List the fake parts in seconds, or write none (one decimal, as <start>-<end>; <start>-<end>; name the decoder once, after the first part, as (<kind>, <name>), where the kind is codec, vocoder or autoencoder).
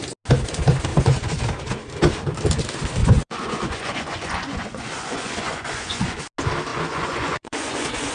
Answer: 0.9-1.4 (vocoder, Vocos); 3.0-6.2; 6.7-8.1